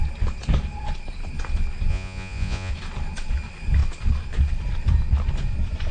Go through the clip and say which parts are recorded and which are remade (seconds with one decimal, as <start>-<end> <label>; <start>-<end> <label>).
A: 0.0-1.9 recorded; 1.9-2.7 remade; 2.7-5.9 recorded